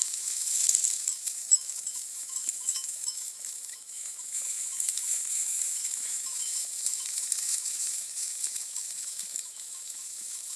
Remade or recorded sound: remade